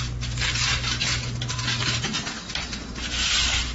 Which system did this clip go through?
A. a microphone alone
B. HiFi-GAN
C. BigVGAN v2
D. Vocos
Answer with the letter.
A